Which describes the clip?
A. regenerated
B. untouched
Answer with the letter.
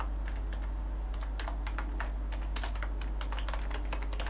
B